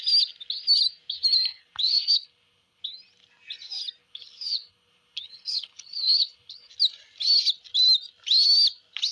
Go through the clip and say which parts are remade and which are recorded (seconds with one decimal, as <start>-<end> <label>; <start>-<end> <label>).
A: 0.0-1.5 recorded; 1.5-2.8 remade; 2.8-4.0 recorded; 4.0-6.7 remade; 6.7-9.1 recorded